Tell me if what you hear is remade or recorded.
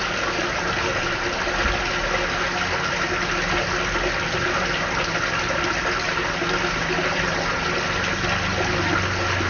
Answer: recorded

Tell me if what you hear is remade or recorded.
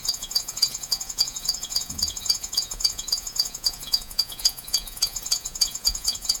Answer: remade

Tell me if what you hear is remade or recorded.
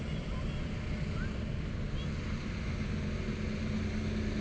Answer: recorded